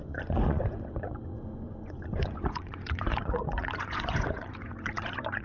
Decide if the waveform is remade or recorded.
remade